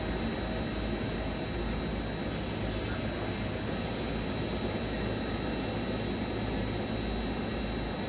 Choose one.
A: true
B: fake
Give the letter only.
A